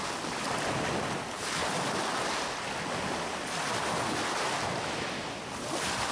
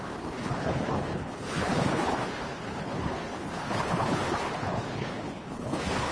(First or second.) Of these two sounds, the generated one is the second